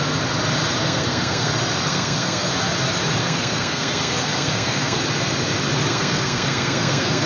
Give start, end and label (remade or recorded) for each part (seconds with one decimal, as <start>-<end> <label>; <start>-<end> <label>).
0.0-0.8 recorded; 0.8-1.5 remade; 1.5-1.9 recorded; 1.9-2.5 remade; 2.5-3.2 recorded; 3.2-5.0 remade; 5.0-5.9 recorded; 5.9-7.3 remade